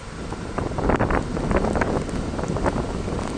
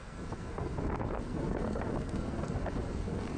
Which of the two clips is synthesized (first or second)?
second